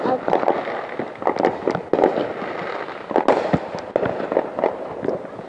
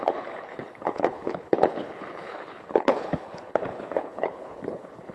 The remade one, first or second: second